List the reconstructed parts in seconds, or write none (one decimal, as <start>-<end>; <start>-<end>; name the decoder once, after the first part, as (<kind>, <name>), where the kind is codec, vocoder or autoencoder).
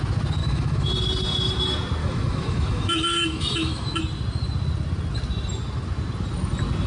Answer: 0.4-0.9 (autoencoder, DAC-VAE); 2.0-4.0